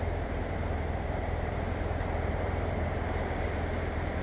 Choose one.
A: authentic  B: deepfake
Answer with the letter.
B